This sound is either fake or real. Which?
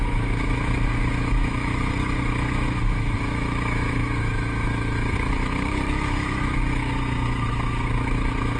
fake